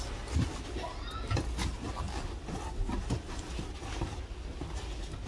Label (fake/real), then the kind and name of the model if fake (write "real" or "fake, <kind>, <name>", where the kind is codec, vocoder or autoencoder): real